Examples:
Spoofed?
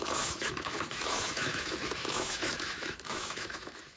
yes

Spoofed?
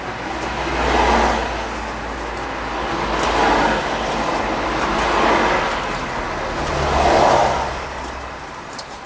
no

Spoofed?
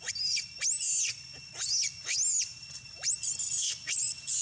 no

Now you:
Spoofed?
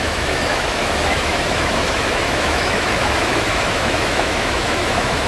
yes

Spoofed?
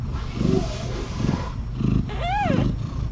no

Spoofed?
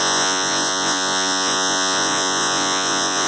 yes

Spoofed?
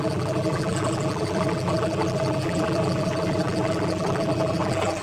yes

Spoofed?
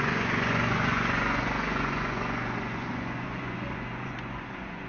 yes